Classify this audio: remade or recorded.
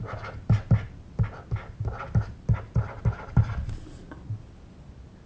recorded